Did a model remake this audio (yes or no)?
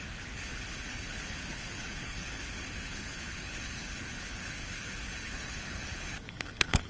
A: yes